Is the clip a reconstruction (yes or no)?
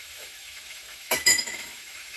yes